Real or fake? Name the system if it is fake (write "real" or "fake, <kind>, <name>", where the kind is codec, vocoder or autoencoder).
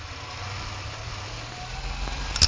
real